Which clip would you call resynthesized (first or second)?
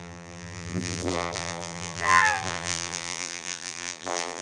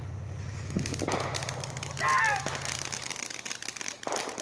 first